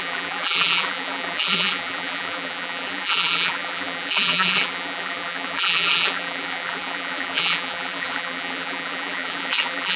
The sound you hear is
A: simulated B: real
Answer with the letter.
A